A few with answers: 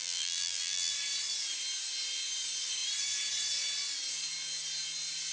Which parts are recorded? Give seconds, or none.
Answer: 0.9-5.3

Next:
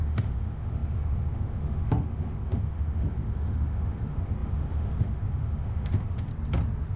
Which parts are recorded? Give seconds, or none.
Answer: 6.3-7.0

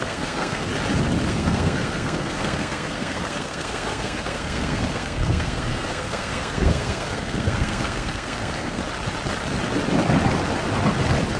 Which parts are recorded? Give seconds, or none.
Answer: 0.7-1.3; 8.8-11.4